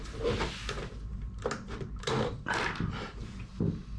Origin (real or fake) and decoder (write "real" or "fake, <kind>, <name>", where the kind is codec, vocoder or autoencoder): real